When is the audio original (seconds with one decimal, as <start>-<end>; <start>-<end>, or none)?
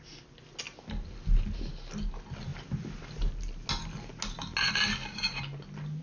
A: 0.0-6.0